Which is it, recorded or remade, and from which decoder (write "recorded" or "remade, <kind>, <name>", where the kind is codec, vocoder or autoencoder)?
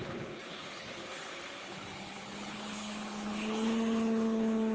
remade, codec, HILCodec